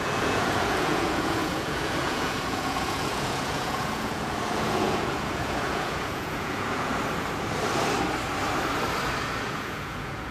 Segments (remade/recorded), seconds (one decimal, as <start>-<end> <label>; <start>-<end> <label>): 0.0-6.9 remade; 6.9-9.4 recorded; 9.4-10.3 remade